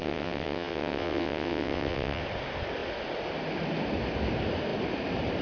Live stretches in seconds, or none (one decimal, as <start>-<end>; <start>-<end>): 2.2-5.4

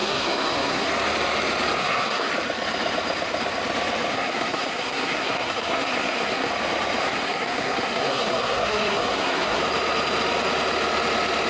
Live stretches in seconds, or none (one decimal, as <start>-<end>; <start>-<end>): 0.9-1.8; 2.3-4.1; 6.5-7.0; 9.6-11.5

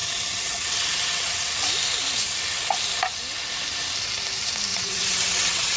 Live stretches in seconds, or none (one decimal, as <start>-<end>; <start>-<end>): 1.5-4.7

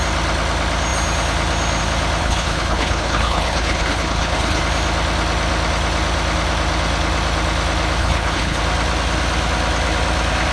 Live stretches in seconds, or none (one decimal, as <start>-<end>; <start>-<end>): 0.0-2.2; 4.6-8.0; 8.6-10.5

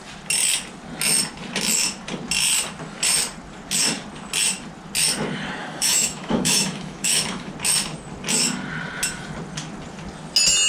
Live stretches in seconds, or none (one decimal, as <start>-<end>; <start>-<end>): 0.0-5.6; 7.5-10.7

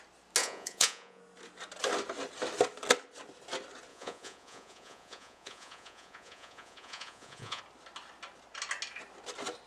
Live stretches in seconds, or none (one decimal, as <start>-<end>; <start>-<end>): 0.0-0.4; 1.2-3.9; 7.6-9.7

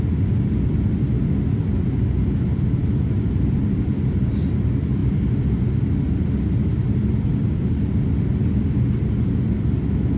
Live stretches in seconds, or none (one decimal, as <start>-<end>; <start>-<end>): 0.0-10.2